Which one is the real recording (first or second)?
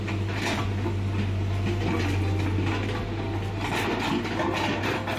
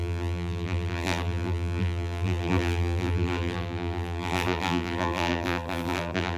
first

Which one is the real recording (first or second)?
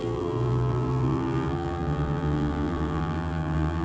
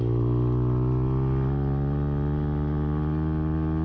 second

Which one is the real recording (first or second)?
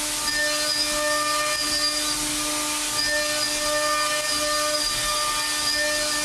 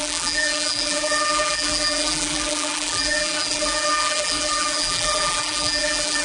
first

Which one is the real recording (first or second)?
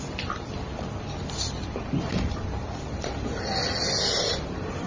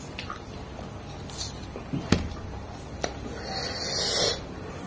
second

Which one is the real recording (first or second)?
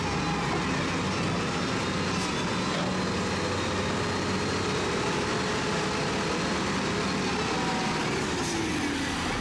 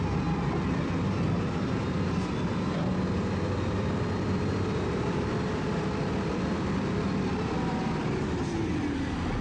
first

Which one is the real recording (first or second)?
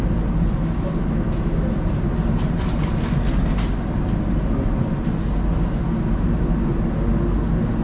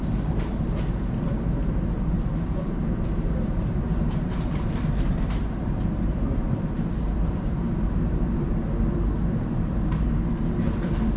first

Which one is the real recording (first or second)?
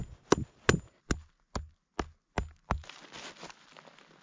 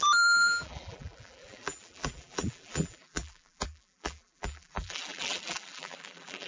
first